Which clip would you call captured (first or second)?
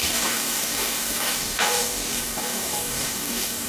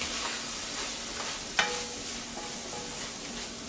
second